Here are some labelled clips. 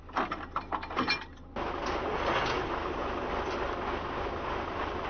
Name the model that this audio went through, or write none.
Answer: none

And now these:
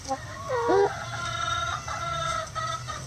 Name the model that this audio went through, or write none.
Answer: none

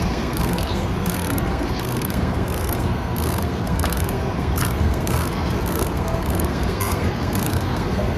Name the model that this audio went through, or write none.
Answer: codec, SNAC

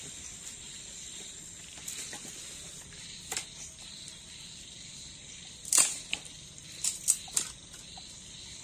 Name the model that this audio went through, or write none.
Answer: none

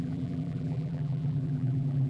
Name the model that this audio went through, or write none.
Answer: vocoder, BigVGAN v2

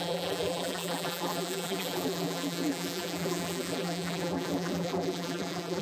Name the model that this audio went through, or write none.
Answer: vocoder, BigVGAN v2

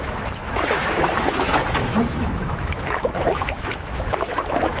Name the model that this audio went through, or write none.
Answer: autoencoder, DAC-VAE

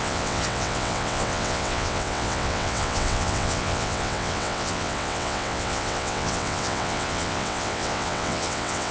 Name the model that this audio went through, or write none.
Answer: vocoder, WaveNeXt